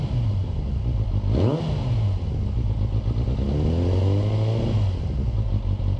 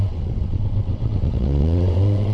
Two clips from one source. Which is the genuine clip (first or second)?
first